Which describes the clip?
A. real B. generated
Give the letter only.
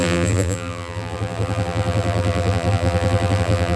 B